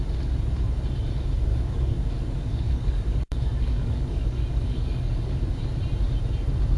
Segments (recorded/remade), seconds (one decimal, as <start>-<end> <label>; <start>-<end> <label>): 0.0-1.5 recorded; 1.5-5.6 remade; 5.6-6.8 recorded